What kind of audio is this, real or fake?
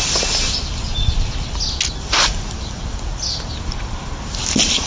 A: real